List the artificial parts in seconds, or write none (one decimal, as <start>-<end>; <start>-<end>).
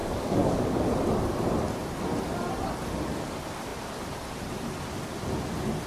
0.0-0.8